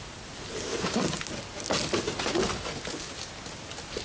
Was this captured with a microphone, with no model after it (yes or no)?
yes